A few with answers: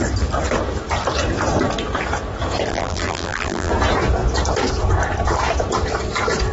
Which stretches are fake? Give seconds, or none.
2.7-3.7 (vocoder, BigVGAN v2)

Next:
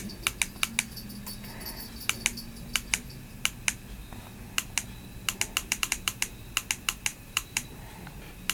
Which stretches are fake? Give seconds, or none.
5.6-6.2 (vocoder, BigVGAN v2); 7.1-8.1

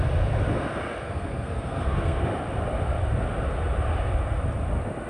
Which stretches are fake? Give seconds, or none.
1.0-2.2 (codec, SNAC)